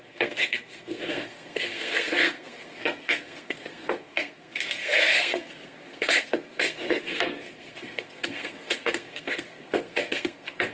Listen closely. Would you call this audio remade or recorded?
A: remade